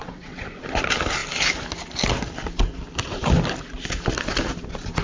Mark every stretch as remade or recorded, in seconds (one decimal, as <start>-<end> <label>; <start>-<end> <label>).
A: 0.0-0.6 remade; 0.6-5.0 recorded